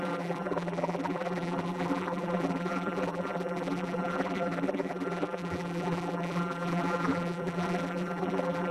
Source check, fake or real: fake